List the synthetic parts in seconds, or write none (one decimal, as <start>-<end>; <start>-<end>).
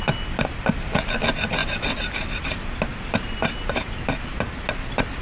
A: none